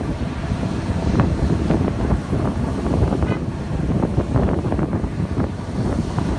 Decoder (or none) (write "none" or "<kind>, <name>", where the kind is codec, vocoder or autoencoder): vocoder, BigVGAN v2